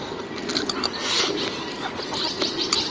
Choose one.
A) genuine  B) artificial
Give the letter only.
A